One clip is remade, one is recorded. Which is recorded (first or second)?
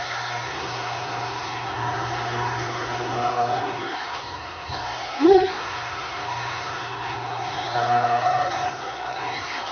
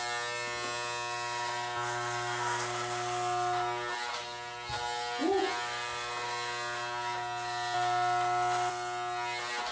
second